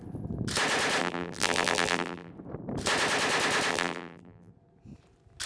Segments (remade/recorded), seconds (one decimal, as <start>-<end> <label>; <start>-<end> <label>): 0.0-1.0 recorded; 1.0-2.3 remade; 2.3-3.7 recorded; 3.7-4.5 remade; 4.5-5.5 recorded